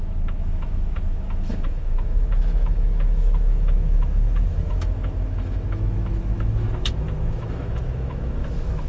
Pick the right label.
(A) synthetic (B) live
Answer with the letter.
A